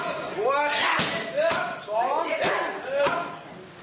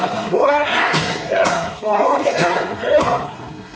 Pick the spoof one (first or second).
second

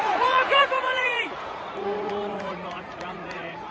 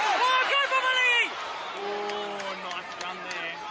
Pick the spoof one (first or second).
first